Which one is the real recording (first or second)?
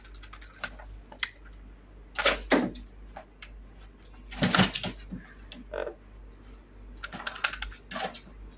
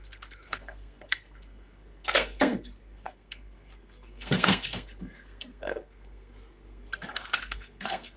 first